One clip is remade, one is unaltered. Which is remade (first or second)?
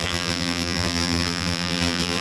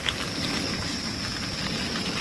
first